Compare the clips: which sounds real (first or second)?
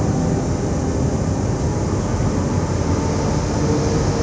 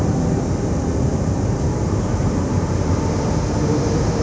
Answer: first